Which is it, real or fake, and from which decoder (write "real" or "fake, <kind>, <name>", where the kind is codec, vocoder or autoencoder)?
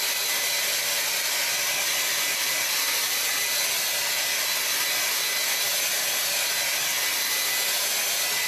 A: real